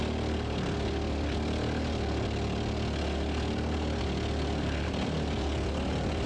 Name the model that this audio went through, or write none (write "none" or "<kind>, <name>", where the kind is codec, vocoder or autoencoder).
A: none